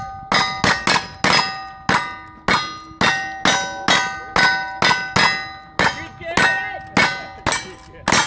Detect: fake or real real